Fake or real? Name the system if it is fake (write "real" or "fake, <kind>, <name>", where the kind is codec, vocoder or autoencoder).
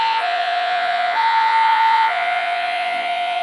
fake, vocoder, Vocos